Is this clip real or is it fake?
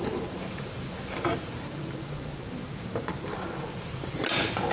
fake